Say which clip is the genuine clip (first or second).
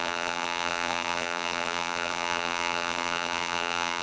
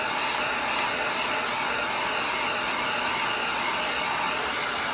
second